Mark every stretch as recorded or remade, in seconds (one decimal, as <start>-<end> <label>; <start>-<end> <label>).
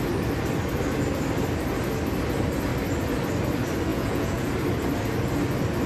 0.0-3.9 recorded; 3.9-4.5 remade; 4.5-5.9 recorded